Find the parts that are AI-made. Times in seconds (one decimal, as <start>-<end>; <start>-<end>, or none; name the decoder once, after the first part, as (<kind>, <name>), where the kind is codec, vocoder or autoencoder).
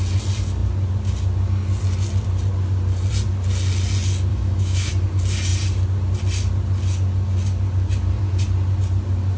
4.3-4.9 (autoencoder, DAC-VAE)